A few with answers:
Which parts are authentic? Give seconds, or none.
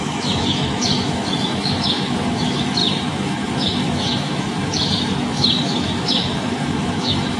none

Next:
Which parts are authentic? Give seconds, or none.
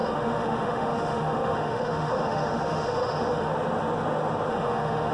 3.5-4.5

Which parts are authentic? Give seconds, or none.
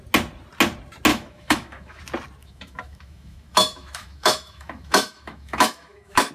0.0-1.1; 2.0-2.4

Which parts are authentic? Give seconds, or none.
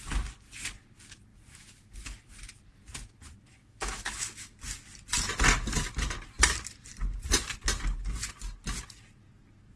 0.0-1.3; 2.3-3.6; 4.5-9.8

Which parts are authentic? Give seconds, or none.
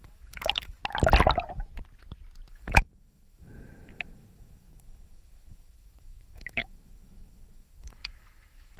0.8-2.5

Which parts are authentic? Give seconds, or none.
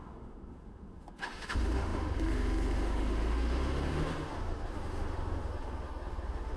none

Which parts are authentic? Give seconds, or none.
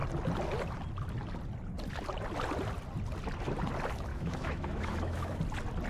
0.0-4.1; 5.4-5.9